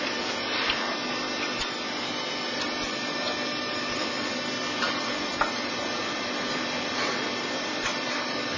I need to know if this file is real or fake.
fake